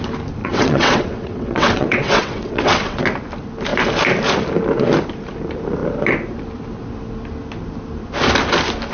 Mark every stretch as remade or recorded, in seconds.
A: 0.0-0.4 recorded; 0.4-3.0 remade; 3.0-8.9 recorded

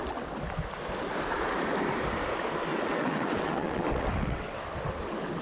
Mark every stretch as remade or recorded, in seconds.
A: 0.0-2.7 recorded; 2.7-4.6 remade; 4.6-5.4 recorded

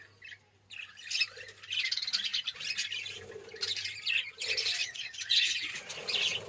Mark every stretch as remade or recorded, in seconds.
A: 0.0-4.8 recorded; 4.8-5.8 remade; 5.8-6.5 recorded